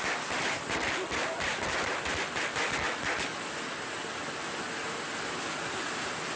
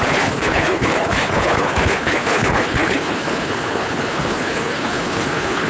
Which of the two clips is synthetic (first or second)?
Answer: second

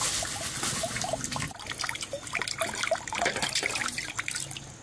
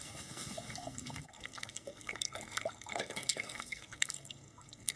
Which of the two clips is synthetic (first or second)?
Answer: second